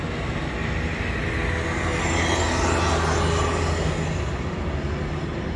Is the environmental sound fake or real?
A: real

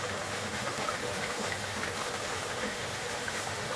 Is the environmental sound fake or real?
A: fake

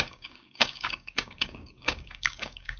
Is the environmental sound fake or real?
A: fake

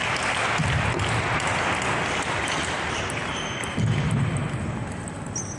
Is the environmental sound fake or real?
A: real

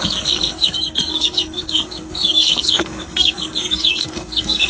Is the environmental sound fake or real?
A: fake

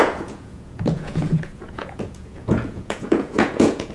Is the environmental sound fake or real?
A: fake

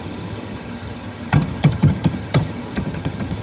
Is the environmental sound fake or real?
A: fake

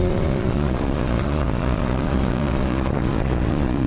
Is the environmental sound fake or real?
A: fake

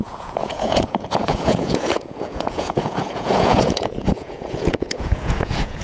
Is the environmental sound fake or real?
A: fake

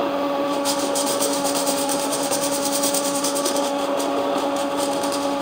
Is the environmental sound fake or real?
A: fake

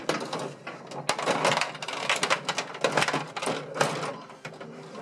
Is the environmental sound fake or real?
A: real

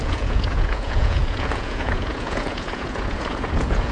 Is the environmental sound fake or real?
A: fake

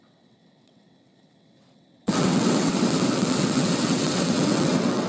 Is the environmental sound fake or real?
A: fake